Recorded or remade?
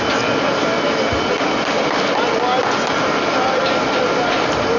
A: recorded